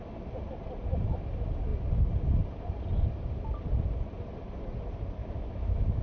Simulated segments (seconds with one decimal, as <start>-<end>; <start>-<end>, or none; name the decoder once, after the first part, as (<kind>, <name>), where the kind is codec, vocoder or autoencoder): 5.2-6.0 (autoencoder, DAC-VAE)